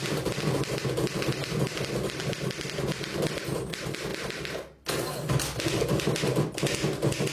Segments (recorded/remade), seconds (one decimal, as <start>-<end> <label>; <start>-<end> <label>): 0.0-7.3 recorded